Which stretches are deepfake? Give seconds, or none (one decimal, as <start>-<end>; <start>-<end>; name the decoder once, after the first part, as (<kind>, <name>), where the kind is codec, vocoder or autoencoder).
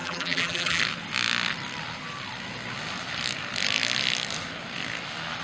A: 0.0-0.8 (vocoder, BigVGAN v2)